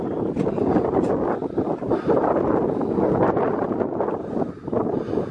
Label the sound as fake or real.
real